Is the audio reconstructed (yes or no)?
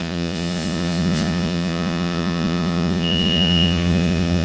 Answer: yes